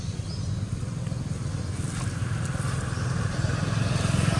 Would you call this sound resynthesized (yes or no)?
no